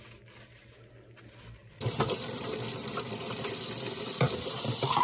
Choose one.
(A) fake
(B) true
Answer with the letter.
B